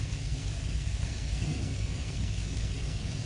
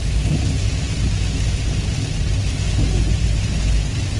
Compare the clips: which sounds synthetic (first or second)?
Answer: first